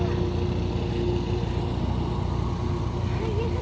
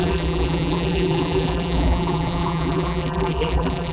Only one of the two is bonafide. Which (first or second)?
first